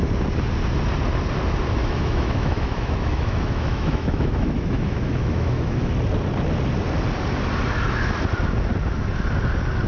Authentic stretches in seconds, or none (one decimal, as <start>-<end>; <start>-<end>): 0.0-1.8; 5.9-9.9